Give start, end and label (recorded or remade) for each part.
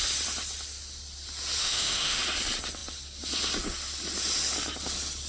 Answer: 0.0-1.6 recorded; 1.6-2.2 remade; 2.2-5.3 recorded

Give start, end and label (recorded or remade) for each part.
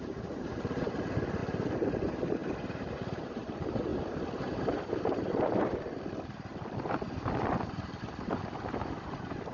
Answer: 0.0-1.4 remade; 1.4-1.9 recorded; 1.9-3.9 remade; 3.9-4.6 recorded; 4.6-6.5 remade; 6.5-8.3 recorded; 8.3-9.5 remade